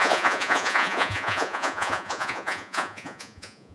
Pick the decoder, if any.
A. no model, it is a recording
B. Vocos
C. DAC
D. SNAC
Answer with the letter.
B